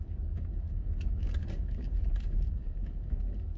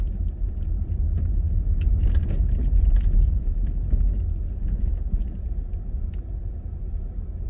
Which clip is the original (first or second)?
second